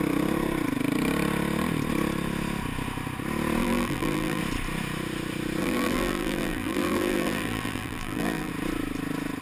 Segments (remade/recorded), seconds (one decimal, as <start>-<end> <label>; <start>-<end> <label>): 0.0-3.6 recorded; 3.6-4.4 remade; 4.4-5.6 recorded; 5.6-8.5 remade; 8.5-9.4 recorded